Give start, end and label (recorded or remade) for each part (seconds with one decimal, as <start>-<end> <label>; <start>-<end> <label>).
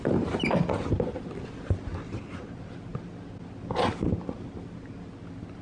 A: 0.0-5.6 recorded